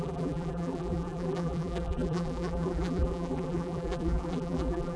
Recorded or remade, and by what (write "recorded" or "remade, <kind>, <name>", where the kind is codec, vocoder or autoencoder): remade, vocoder, BigVGAN v2